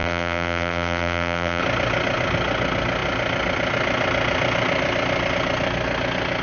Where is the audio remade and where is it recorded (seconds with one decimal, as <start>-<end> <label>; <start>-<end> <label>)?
0.0-1.6 remade; 1.6-6.4 recorded